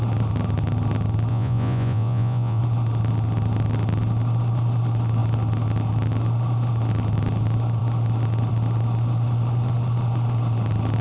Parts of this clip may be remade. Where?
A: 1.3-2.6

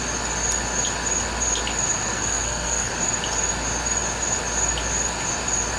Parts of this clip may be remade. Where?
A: 1.9-2.9

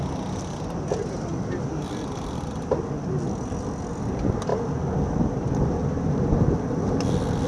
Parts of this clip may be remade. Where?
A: 1.3-3.9

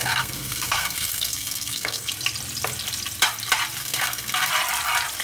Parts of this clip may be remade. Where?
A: 0.0-2.1; 3.8-4.5

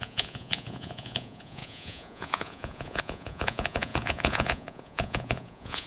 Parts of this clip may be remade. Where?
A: 0.0-5.9

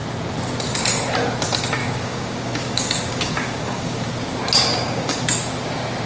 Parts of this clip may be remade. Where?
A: 1.8-4.1; 4.7-5.2